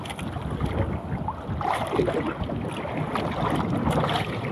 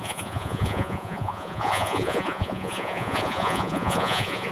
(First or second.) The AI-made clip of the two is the second